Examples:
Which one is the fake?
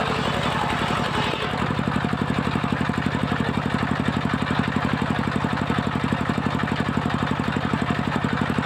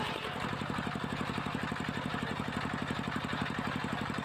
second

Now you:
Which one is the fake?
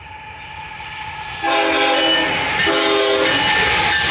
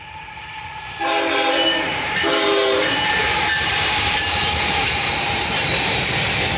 second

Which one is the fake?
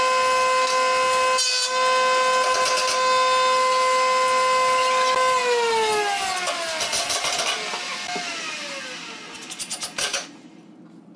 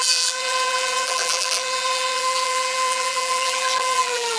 second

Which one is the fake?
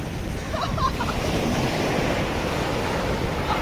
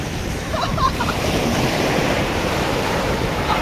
second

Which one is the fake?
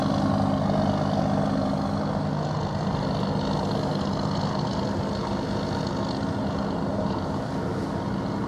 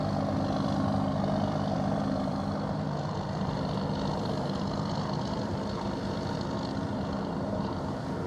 second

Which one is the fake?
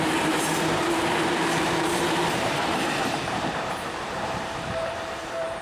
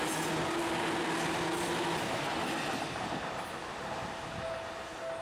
first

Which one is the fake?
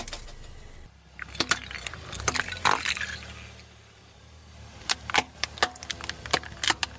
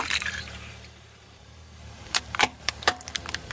second